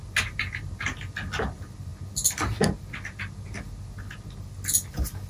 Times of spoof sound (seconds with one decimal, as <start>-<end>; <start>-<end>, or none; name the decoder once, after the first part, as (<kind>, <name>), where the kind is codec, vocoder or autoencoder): none